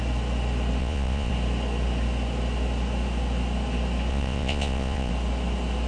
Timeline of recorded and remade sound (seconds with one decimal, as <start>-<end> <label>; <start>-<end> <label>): 0.0-0.8 recorded; 0.8-1.3 remade; 1.3-4.1 recorded; 4.1-5.1 remade; 5.1-5.9 recorded